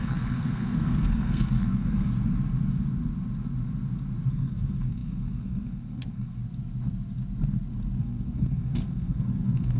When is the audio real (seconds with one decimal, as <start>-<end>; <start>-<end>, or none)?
2.1-4.3; 6.4-8.0